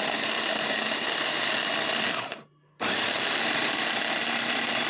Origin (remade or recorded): recorded